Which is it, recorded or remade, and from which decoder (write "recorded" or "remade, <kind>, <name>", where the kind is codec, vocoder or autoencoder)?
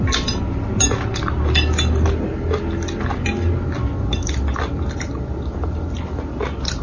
recorded